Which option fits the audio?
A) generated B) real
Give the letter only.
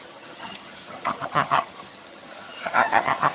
A